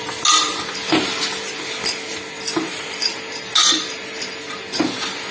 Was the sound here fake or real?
real